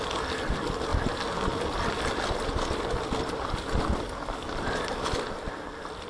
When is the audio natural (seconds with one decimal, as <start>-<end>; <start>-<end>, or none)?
0.0-6.1